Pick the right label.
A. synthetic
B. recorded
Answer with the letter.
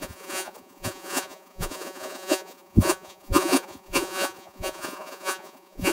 A